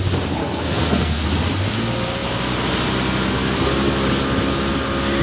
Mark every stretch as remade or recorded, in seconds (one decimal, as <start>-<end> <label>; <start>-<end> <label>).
0.0-0.4 recorded; 0.4-1.2 remade; 1.2-5.2 recorded